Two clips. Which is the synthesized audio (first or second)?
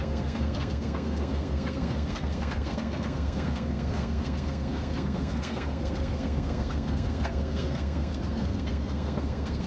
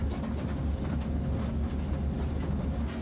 first